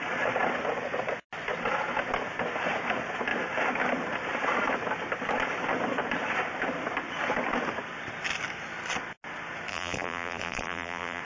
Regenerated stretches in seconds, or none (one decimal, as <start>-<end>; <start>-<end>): 9.7-11.2